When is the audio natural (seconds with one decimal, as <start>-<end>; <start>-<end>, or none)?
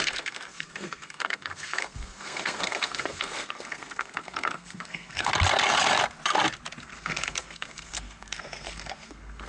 5.3-6.8